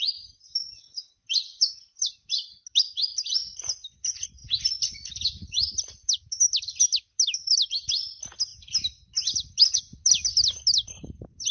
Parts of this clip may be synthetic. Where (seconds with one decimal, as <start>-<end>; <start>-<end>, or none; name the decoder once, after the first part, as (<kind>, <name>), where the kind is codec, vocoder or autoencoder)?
none